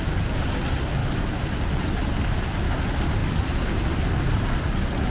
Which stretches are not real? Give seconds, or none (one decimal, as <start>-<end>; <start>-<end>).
none